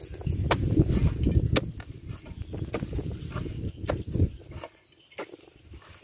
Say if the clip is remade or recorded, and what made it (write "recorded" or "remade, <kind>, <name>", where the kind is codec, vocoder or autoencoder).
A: recorded